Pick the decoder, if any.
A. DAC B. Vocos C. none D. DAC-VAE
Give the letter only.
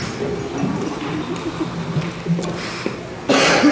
C